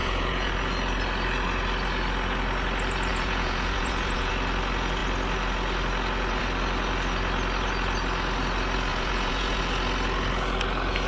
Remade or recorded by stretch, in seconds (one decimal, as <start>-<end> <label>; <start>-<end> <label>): 0.0-0.5 remade; 0.5-3.1 recorded; 3.1-4.3 remade; 4.3-8.9 recorded; 8.9-9.6 remade; 9.6-11.1 recorded